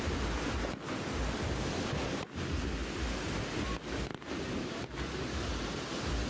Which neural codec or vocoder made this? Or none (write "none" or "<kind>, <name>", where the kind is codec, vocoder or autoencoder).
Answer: none